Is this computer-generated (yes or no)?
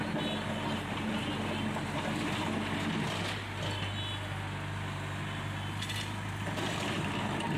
no